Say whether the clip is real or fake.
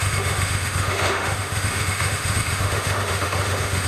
fake